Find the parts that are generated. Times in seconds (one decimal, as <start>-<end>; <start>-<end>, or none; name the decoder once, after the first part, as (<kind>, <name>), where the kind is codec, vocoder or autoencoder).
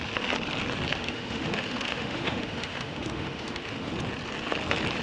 0.9-3.9 (autoencoder, DAC-VAE)